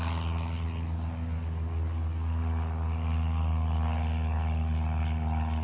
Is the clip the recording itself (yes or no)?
yes